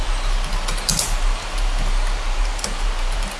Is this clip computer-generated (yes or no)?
no